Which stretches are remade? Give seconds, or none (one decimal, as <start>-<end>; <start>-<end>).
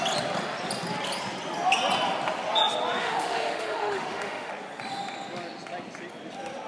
3.0-4.5